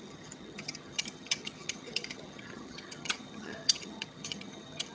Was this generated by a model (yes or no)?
yes